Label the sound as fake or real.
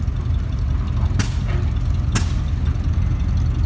real